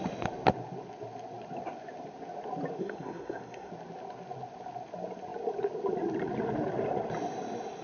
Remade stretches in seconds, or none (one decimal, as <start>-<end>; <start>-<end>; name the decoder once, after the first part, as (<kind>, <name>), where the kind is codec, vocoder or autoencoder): 2.8-3.7 (codec, SNAC)